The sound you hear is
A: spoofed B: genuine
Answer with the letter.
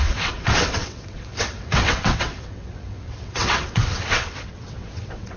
A